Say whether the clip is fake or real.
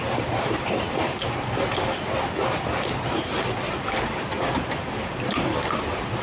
real